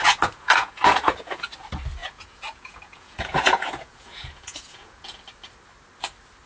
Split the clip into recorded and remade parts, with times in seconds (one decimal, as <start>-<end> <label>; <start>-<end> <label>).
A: 0.0-1.5 remade; 1.5-2.0 recorded; 2.0-5.2 remade; 5.2-6.5 recorded